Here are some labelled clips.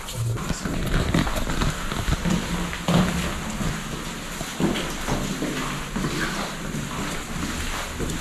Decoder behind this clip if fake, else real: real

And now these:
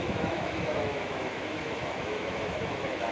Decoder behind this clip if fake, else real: fake, autoencoder, DAC-VAE